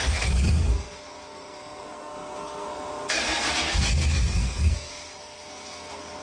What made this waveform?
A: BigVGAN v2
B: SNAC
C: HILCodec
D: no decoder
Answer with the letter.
B